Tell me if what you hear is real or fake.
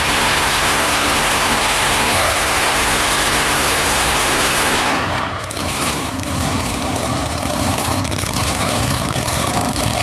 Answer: fake